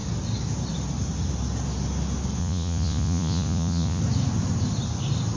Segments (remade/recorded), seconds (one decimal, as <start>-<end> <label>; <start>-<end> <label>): 0.0-2.4 recorded; 2.4-4.0 remade; 4.0-5.4 recorded